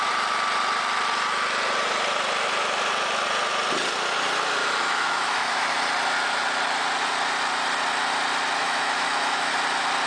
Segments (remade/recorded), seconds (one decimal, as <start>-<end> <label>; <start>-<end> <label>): 0.0-4.6 recorded; 4.6-5.8 remade; 5.8-8.6 recorded; 8.6-9.5 remade; 9.5-10.1 recorded